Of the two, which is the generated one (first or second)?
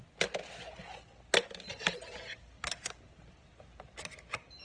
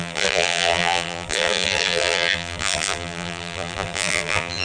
second